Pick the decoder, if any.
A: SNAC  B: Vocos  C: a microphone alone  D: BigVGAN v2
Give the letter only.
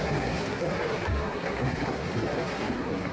A